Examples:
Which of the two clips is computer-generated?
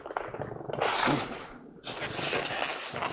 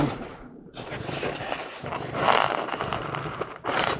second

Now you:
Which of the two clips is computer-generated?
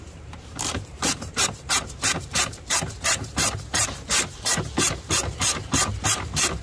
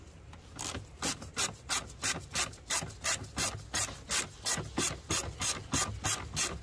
first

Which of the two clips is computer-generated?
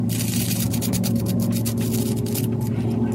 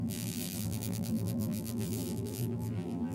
second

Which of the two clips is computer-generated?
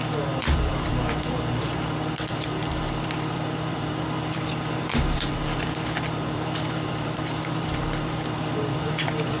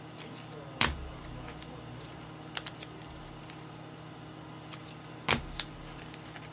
first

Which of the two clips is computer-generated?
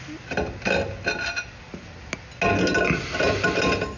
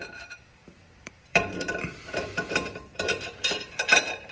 second